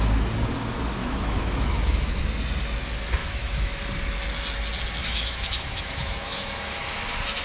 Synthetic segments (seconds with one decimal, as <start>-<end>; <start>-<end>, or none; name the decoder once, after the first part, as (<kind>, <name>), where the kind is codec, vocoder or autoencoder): 1.0-2.2 (autoencoder, DAC-VAE); 3.2-3.8; 5.0-7.0